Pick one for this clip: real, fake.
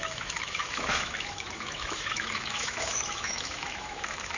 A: fake